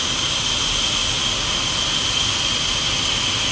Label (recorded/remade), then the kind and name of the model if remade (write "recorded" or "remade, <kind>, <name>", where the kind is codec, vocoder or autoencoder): recorded